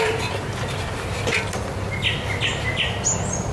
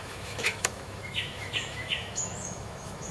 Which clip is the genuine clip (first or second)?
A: first